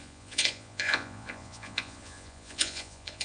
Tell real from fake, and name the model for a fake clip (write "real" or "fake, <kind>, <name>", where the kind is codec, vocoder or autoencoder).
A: fake, vocoder, Vocos